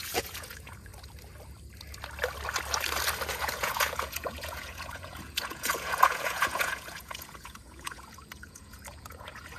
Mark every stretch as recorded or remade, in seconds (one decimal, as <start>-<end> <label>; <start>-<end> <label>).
0.0-0.9 remade; 0.9-3.3 recorded; 3.3-9.6 remade